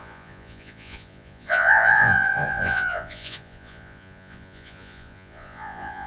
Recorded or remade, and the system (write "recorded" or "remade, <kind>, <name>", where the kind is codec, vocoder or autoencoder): remade, vocoder, Vocos